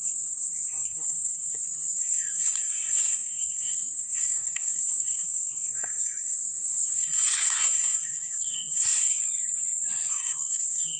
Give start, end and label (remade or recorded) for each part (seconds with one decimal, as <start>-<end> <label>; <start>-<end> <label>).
0.0-9.2 remade; 9.2-10.1 recorded; 10.1-11.0 remade